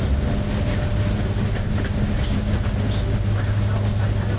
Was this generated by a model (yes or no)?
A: no